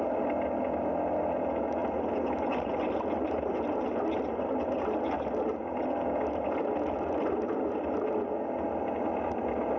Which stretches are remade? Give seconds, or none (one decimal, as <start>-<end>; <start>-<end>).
none